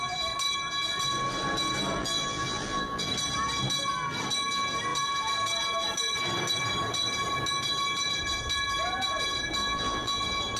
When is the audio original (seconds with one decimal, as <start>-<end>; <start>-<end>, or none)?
0.0-2.0; 3.1-9.6; 10.2-10.6